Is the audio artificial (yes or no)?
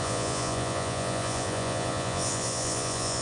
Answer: yes